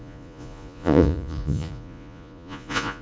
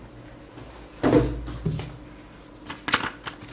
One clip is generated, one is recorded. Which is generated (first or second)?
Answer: first